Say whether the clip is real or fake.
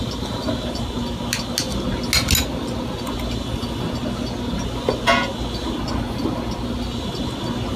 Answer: real